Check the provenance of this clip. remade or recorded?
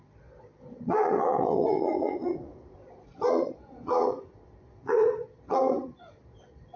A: remade